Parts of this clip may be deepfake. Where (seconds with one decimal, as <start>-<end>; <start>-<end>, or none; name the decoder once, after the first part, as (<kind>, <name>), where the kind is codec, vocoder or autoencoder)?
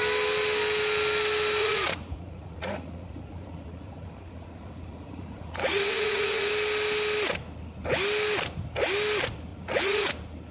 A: 1.6-6.5 (vocoder, Vocos); 9.5-10.1